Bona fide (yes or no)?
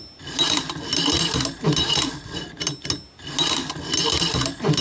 yes